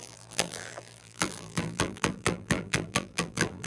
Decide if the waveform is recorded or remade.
remade